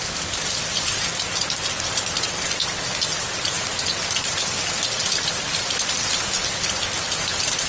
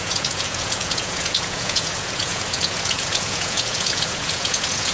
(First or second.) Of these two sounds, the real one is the first